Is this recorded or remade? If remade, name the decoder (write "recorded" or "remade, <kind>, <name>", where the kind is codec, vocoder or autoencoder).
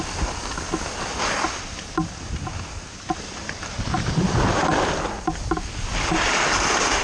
recorded